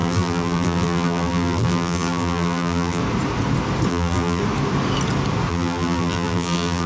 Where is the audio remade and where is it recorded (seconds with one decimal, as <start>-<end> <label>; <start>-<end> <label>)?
0.0-3.0 remade; 3.0-3.9 recorded; 3.9-4.4 remade; 4.4-5.5 recorded; 5.5-6.9 remade